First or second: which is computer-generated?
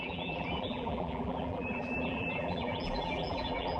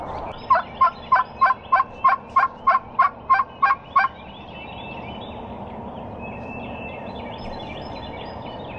first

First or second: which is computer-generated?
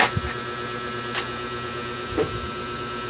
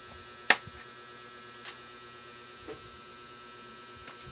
first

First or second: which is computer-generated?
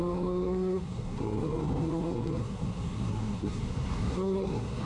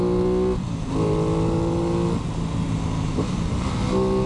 first